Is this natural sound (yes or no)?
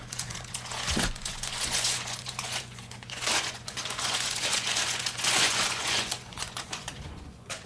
no